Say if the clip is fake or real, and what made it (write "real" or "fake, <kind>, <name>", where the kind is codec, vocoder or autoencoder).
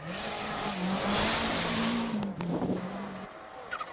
real